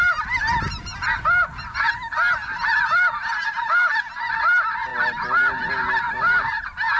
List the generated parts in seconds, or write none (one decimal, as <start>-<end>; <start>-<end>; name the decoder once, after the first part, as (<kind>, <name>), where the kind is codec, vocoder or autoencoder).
none